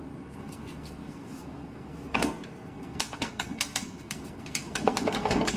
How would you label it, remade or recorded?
remade